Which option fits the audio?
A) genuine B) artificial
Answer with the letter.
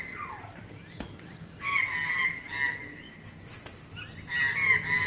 A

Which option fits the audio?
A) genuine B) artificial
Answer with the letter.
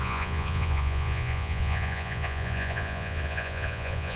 B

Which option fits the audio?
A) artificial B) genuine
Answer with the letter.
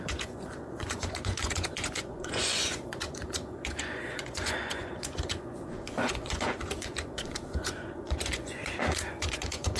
A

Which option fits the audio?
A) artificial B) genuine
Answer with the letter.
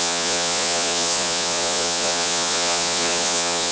A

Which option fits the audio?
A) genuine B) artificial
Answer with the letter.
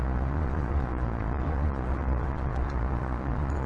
B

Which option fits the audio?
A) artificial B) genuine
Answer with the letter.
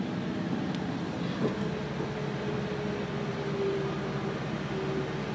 B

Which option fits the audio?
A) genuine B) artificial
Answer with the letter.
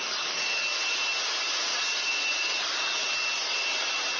A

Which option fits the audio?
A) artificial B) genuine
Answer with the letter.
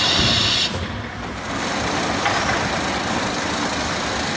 B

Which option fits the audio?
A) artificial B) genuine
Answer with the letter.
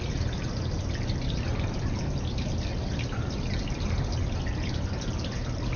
B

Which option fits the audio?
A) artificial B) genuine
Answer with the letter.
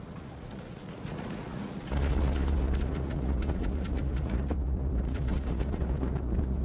A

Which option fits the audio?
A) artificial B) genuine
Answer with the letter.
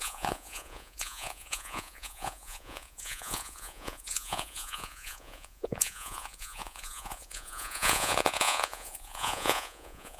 A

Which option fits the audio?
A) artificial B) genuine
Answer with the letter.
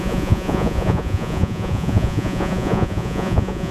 A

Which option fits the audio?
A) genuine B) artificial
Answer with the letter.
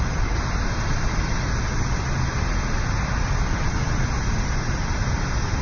A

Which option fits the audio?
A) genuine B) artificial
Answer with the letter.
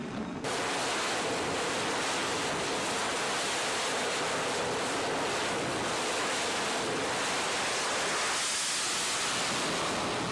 A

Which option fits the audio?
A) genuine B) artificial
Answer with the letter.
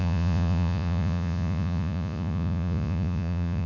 B